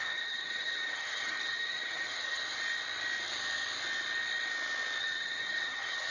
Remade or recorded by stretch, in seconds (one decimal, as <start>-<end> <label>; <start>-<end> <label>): 0.0-2.4 remade; 2.4-5.0 recorded; 5.0-6.1 remade